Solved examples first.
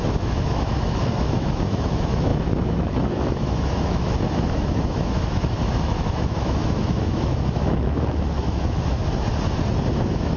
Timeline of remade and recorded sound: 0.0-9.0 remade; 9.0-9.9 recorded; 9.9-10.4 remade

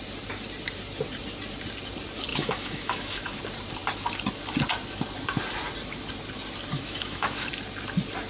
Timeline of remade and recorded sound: 0.0-2.3 recorded; 2.3-3.4 remade; 3.4-6.7 recorded; 6.7-7.5 remade; 7.5-8.3 recorded

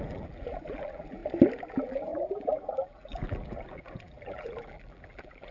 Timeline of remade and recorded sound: 0.0-1.2 remade; 1.2-1.7 recorded; 1.7-5.5 remade

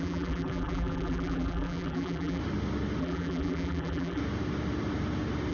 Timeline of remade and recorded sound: 0.0-2.4 remade; 2.4-3.0 recorded; 3.0-4.2 remade; 4.2-5.5 recorded

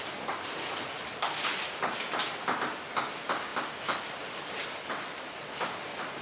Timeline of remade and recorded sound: 0.0-6.2 recorded

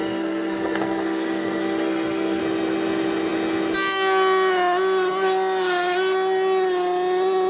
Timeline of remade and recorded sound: 0.0-2.4 remade; 2.4-7.5 recorded